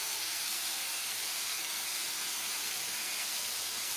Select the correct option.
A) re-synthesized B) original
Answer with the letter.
A